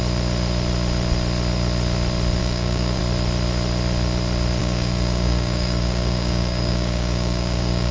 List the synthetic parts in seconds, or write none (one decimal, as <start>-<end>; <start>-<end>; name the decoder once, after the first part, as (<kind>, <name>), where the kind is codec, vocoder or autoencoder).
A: 2.4-3.0 (codec, DAC); 4.6-7.9